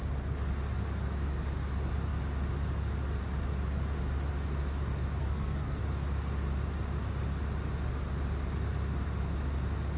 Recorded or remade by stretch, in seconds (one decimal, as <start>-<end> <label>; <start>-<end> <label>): 0.0-5.2 recorded; 5.2-5.8 remade; 5.8-10.0 recorded